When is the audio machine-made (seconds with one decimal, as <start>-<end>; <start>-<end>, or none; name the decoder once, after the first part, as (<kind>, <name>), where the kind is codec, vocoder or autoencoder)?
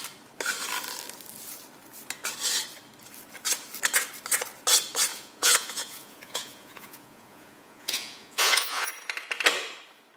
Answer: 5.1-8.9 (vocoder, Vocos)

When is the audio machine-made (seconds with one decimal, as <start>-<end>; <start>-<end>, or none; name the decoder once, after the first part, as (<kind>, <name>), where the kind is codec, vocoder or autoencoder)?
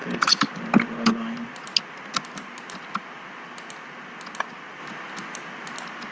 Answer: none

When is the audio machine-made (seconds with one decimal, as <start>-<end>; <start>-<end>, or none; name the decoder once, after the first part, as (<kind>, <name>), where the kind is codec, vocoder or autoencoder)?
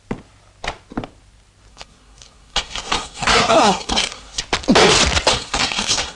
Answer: 1.7-4.4 (codec, SNAC); 5.3-6.2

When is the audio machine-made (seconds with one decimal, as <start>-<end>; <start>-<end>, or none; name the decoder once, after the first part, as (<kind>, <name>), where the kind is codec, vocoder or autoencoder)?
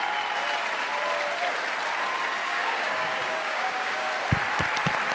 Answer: 2.4-4.1 (codec, DAC)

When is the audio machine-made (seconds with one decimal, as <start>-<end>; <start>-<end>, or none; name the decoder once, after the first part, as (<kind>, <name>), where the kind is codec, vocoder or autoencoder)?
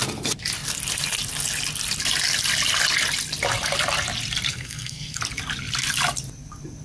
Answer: 4.5-5.2 (codec, SNAC)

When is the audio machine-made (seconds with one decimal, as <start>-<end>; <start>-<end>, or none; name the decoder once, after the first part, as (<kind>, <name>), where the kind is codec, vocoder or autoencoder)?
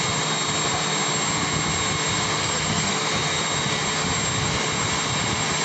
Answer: 2.4-3.1 (codec, SNAC)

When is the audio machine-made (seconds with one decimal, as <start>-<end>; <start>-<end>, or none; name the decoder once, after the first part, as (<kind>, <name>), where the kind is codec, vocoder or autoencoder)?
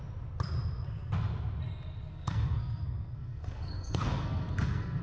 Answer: 2.1-5.0 (codec, SNAC)